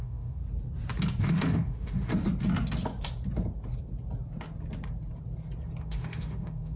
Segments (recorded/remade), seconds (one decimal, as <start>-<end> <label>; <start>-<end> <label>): 0.0-0.4 remade; 0.4-1.2 recorded; 1.2-2.1 remade; 2.1-5.8 recorded; 5.8-6.8 remade